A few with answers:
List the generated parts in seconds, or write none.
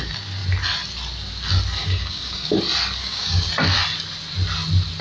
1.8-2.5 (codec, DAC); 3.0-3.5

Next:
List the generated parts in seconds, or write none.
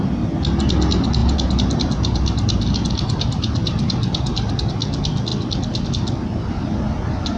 1.2-4.5 (vocoder, BigVGAN v2)